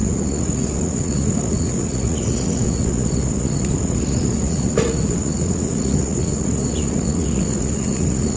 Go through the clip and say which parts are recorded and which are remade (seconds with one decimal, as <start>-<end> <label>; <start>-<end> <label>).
0.0-8.4 remade